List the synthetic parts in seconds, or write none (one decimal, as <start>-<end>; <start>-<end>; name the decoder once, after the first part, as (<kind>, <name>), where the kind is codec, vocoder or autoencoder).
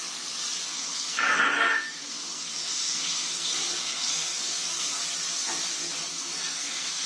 0.7-5.0 (codec, SNAC); 6.1-7.1